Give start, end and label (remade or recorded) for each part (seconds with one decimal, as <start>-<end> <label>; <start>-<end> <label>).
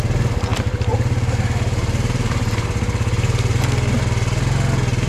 0.0-0.5 recorded; 0.5-3.6 remade; 3.6-5.1 recorded